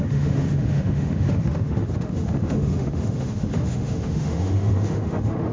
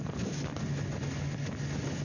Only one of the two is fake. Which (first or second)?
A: first